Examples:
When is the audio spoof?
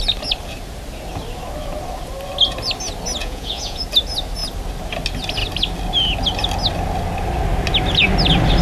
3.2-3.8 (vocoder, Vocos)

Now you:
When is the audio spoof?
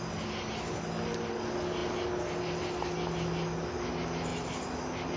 none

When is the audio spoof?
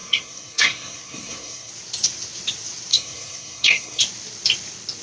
0.0-1.7 (codec, SNAC); 2.9-4.0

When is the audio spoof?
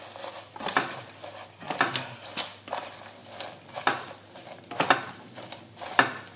0.0-3.2 (vocoder, BigVGAN v2); 5.1-6.4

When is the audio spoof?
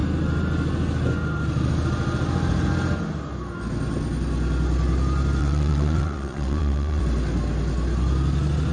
5.4-7.0 (vocoder, WaveNeXt)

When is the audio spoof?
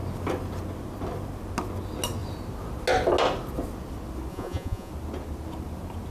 4.3-4.9 (vocoder, Vocos)